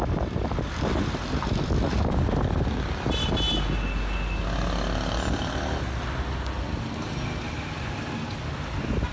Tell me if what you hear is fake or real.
real